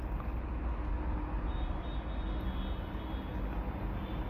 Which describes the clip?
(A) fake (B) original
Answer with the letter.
B